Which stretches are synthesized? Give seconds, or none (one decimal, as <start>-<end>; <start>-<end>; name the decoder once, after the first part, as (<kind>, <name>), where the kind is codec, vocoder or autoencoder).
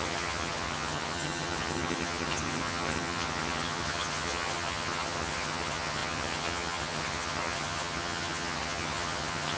0.0-9.6 (vocoder, HiFi-GAN)